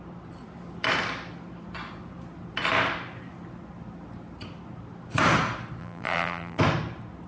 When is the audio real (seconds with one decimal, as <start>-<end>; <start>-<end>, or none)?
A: 0.0-5.8; 6.6-7.3